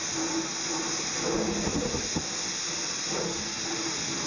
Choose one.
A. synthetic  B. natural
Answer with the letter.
B